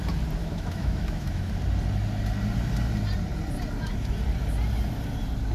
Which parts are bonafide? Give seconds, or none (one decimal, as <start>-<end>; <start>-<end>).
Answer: 0.0-0.4; 1.5-5.5